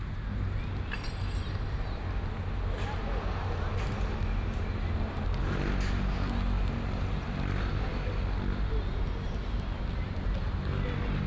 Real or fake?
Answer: real